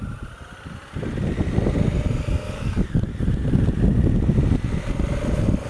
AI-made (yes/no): no